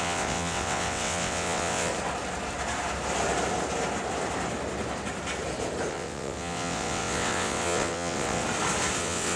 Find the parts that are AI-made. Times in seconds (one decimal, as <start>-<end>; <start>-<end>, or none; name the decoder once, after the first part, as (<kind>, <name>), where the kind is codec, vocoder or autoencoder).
0.0-1.9 (vocoder, WaveNeXt); 5.9-8.4; 9.0-9.4